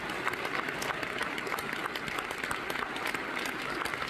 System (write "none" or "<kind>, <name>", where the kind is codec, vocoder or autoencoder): none